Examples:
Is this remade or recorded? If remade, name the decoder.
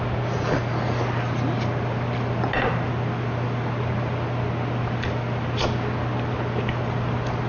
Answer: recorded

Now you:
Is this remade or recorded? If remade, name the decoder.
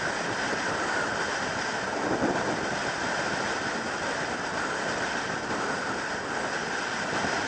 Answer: recorded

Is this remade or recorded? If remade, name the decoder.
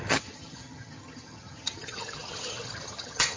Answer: remade, vocoder, HiFi-GAN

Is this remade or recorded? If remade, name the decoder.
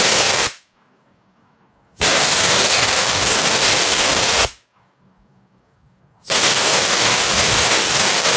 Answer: remade, codec, DAC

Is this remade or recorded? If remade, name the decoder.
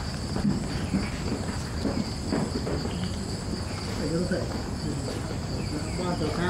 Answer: recorded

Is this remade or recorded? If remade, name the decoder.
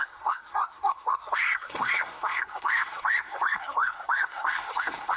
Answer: remade, codec, SNAC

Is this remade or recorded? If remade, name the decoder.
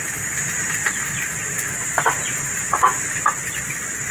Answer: recorded